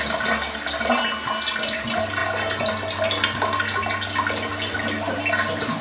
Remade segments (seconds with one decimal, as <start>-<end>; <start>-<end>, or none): none